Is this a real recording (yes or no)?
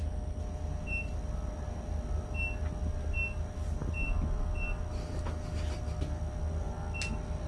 yes